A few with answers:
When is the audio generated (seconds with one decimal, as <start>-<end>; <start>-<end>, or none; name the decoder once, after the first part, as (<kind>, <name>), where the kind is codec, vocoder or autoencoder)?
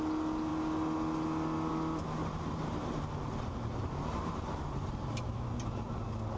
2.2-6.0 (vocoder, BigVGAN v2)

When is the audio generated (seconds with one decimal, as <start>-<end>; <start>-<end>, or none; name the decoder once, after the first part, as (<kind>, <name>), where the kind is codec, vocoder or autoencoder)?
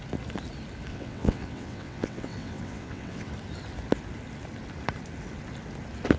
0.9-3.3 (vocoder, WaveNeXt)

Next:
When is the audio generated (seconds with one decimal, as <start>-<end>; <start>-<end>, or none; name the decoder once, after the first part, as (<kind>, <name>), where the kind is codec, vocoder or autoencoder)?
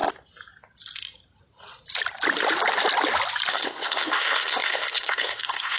3.5-5.8 (codec, SNAC)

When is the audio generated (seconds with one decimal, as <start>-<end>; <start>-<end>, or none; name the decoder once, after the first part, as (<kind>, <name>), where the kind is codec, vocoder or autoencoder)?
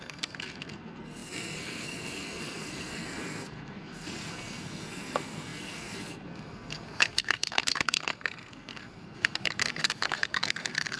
0.0-11.0 (codec, SNAC)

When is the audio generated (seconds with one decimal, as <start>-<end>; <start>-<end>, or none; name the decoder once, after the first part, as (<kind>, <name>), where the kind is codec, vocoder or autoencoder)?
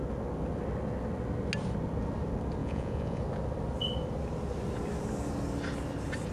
2.6-3.2 (vocoder, Vocos)